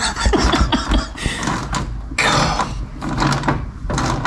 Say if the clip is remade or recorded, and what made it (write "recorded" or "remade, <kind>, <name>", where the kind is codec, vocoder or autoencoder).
recorded